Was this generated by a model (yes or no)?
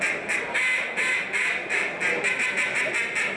no